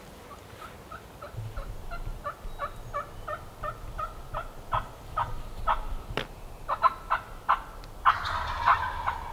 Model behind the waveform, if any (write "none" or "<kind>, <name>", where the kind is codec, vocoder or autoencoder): none